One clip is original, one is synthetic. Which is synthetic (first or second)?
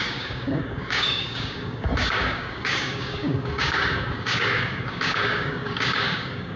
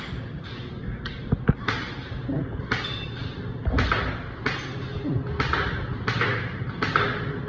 first